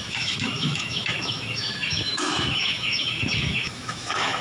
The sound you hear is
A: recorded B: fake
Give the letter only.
B